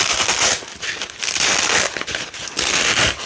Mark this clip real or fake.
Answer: fake